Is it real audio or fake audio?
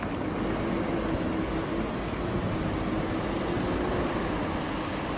real